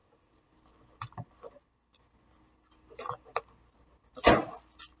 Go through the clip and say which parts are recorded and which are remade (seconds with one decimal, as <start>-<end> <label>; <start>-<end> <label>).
0.0-5.0 recorded